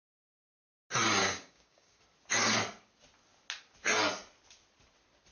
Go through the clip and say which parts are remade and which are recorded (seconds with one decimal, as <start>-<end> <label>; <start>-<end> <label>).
0.0-1.2 recorded; 1.2-2.0 remade; 2.0-5.3 recorded